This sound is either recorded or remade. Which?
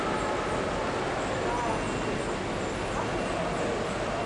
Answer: recorded